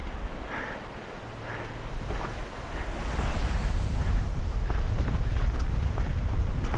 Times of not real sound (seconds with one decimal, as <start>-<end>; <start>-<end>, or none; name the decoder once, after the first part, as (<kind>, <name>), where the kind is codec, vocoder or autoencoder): 4.1-6.8 (vocoder, BigVGAN v2)